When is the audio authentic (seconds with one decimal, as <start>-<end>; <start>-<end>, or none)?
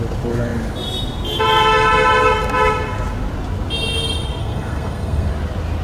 0.0-4.4; 5.3-5.8